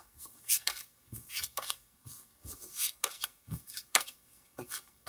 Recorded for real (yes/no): no